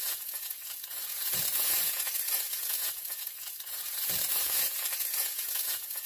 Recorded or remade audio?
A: remade